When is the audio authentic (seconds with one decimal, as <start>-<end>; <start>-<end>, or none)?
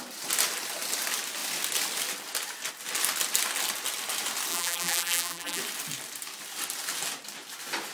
0.0-4.5; 5.6-7.9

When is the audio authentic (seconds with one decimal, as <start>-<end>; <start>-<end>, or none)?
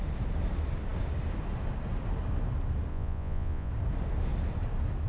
0.0-2.9; 3.7-5.1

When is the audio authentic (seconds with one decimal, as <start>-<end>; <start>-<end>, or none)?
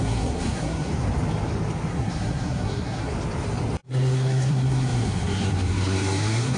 0.9-1.9; 3.1-3.9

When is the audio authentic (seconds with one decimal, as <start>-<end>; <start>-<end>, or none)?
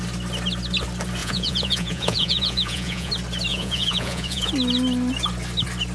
0.0-1.2; 3.1-3.5; 4.5-5.9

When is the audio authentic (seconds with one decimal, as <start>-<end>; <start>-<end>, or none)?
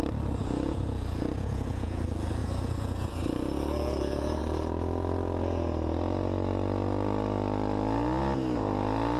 0.0-0.4; 2.0-2.4; 3.1-9.2